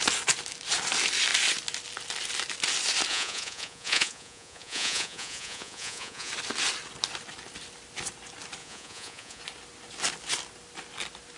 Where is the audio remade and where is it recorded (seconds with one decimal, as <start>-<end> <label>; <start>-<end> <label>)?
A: 0.0-3.1 recorded; 3.1-6.3 remade; 6.3-8.6 recorded; 8.6-9.4 remade; 9.4-11.4 recorded

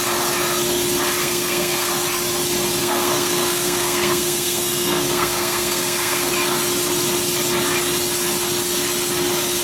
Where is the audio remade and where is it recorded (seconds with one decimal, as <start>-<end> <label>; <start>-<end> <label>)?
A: 0.0-1.2 recorded; 1.2-1.9 remade; 1.9-2.8 recorded; 2.8-6.3 remade; 6.3-9.6 recorded

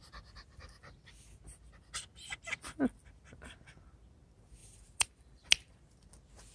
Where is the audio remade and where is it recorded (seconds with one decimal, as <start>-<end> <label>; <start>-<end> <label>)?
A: 0.0-4.6 recorded; 4.6-5.7 remade; 5.7-6.5 recorded